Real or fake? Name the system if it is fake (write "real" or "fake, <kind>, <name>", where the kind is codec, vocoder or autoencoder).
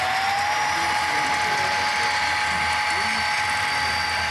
real